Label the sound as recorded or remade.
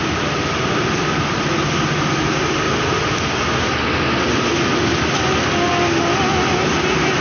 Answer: recorded